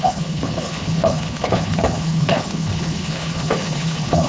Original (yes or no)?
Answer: no